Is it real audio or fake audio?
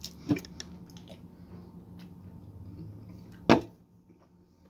real